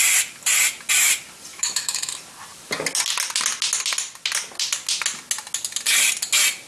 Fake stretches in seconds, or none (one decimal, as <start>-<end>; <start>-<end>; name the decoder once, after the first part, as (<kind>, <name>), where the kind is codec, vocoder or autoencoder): 1.5-2.1 (autoencoder, DAC-VAE)